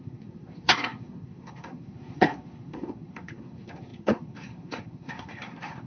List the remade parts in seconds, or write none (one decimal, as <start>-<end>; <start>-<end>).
0.0-5.9